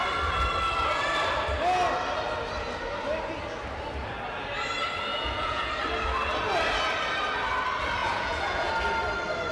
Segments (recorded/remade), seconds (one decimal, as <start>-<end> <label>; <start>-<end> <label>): 0.0-5.1 recorded; 5.1-5.7 remade; 5.7-8.0 recorded; 8.0-8.7 remade; 8.7-9.5 recorded